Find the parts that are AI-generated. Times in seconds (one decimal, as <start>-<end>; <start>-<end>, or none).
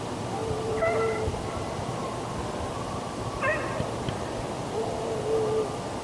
0.4-1.1